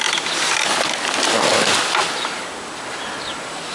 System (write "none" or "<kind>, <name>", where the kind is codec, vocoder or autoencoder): none